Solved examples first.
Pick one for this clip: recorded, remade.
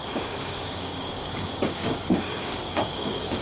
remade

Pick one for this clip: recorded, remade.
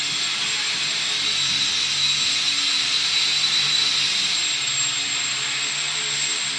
recorded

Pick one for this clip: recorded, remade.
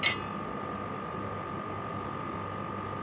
recorded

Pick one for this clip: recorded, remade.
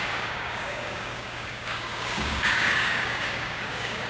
remade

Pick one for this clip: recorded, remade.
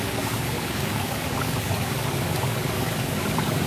remade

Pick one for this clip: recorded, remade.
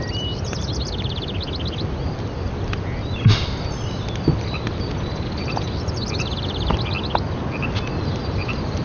recorded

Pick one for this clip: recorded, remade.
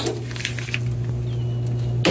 recorded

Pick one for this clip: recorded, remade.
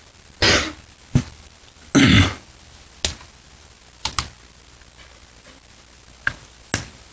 recorded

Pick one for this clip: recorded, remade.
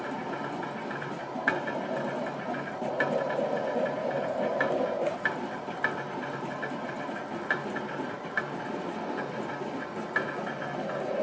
recorded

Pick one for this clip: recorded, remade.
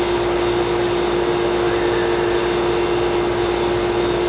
recorded